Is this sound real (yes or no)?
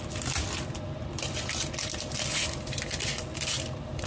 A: yes